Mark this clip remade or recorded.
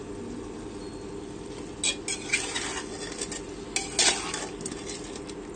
recorded